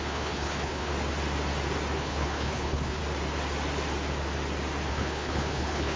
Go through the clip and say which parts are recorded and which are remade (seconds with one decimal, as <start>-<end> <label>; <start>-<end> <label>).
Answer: 0.0-0.9 remade; 0.9-2.0 recorded; 2.0-3.0 remade; 3.0-4.9 recorded; 4.9-6.0 remade